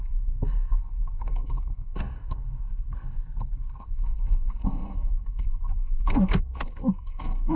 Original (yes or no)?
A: no